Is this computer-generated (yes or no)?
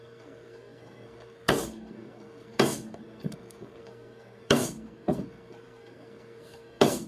yes